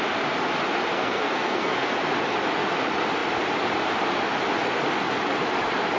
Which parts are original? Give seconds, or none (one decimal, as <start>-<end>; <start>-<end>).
0.0-0.9; 1.9-6.0